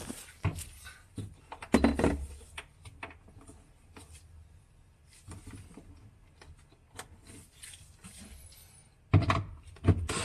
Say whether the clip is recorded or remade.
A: recorded